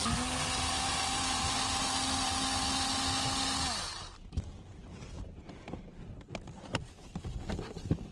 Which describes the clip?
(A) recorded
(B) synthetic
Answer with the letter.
A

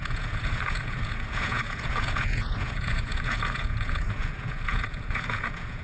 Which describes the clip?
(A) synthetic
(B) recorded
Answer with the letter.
A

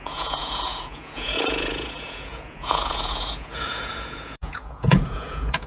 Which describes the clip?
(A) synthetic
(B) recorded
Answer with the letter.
A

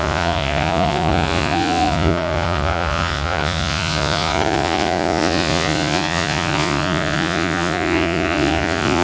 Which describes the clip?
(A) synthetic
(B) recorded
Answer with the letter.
A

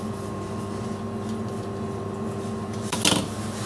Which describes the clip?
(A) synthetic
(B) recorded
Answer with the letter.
B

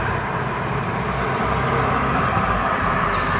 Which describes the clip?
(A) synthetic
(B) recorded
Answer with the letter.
B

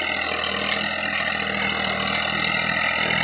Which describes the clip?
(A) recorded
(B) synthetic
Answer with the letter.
A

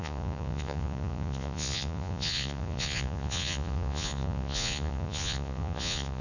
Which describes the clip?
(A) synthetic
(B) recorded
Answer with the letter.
A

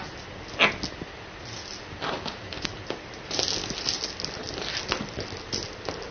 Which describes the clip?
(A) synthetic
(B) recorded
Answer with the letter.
B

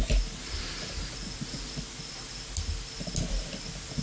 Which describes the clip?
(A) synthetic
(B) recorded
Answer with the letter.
B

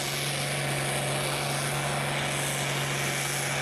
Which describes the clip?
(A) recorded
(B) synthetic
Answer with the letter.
A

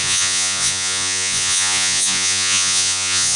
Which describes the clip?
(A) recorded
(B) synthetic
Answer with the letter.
B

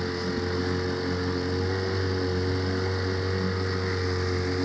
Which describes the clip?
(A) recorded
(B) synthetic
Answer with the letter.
A